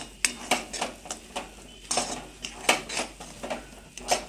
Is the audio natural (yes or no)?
yes